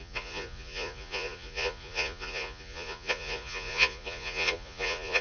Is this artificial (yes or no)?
yes